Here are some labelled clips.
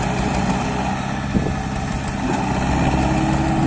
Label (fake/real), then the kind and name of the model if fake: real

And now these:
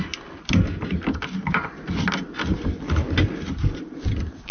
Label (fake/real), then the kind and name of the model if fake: real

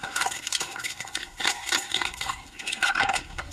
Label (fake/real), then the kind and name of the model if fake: fake, codec, SNAC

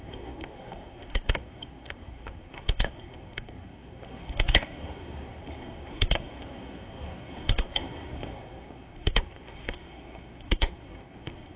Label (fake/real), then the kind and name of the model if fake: fake, codec, SNAC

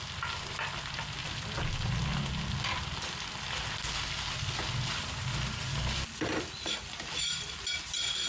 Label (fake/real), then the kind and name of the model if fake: real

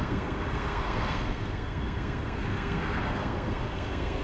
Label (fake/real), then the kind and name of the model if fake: fake, codec, SNAC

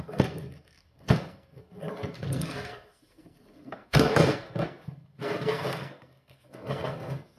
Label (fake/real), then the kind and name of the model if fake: fake, codec, SNAC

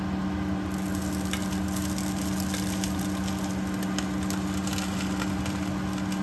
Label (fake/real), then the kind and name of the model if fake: real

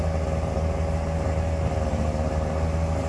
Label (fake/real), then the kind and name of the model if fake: real